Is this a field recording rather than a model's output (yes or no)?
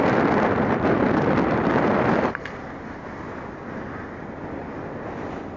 yes